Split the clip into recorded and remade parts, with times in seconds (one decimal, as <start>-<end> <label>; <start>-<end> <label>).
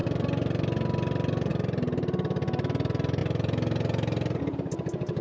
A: 0.0-5.2 recorded